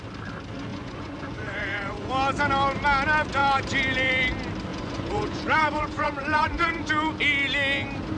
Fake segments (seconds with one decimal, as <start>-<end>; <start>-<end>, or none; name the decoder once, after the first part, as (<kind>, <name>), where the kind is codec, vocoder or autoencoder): 0.7-2.1 (vocoder, Vocos); 4.7-6.9